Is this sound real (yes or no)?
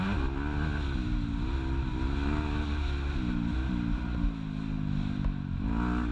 yes